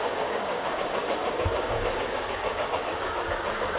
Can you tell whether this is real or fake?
fake